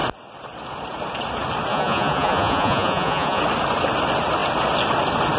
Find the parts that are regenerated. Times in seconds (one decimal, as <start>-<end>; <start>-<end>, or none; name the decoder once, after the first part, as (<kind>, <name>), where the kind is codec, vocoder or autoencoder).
1.7-3.4 (vocoder, Vocos)